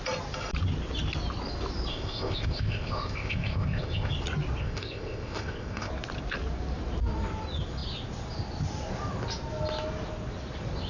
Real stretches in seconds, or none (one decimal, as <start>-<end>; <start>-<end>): 0.0-1.9; 4.1-4.6; 5.9-10.9